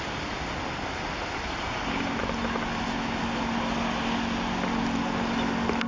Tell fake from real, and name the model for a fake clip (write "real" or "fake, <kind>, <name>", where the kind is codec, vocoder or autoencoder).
real